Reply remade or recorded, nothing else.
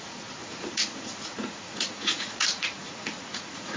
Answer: remade